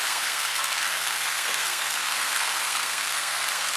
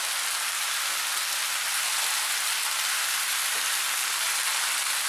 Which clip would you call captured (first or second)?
second